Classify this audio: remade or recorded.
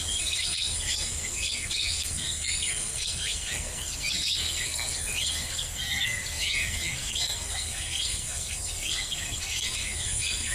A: remade